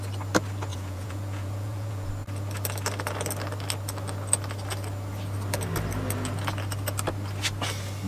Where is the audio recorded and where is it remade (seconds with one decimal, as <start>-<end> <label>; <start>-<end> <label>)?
0.0-0.7 recorded; 0.7-2.1 remade; 2.1-8.1 recorded